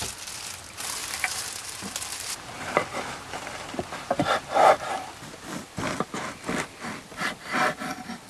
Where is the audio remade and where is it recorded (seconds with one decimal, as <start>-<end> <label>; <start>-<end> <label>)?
0.0-1.0 recorded; 1.0-5.1 remade; 5.1-8.3 recorded